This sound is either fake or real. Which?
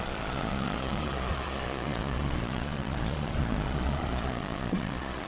fake